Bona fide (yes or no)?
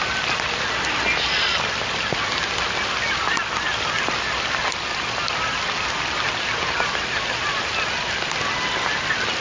yes